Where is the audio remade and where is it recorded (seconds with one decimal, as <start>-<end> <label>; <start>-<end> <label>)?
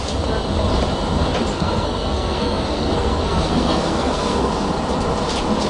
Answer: 0.0-1.5 recorded; 1.5-4.5 remade; 4.5-5.7 recorded